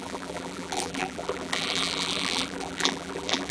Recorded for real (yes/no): no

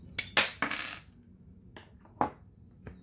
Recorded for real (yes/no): yes